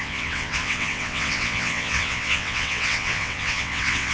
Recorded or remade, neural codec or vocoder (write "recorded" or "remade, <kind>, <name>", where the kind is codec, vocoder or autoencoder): remade, vocoder, WaveNeXt